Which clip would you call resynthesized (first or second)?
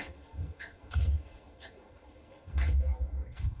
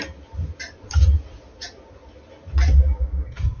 first